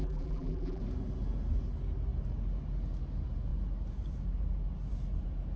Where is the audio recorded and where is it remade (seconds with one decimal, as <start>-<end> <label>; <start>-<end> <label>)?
0.0-0.8 remade; 0.8-5.6 recorded